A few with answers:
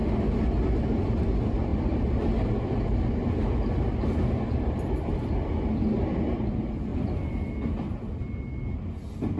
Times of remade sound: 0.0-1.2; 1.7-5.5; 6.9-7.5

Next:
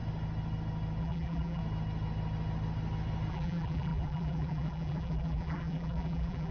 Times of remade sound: 1.0-1.6; 3.3-6.5

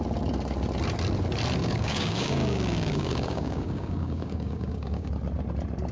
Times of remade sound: 1.6-5.1

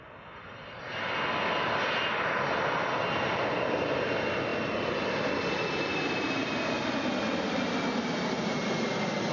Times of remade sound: none

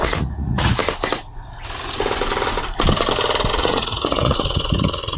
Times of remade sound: 0.0-0.8; 3.5-5.2

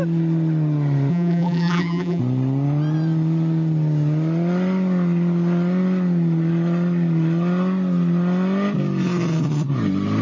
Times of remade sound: 1.1-2.2

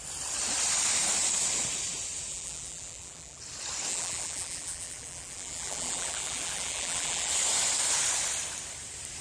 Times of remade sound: 2.3-3.4; 3.9-7.3

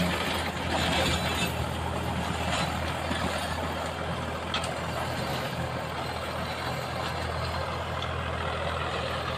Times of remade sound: 5.3-5.8